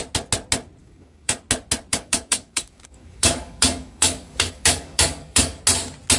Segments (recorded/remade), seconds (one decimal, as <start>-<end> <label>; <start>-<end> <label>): 0.0-0.8 recorded; 0.8-1.4 remade; 1.4-1.9 recorded; 1.9-5.6 remade; 5.6-6.2 recorded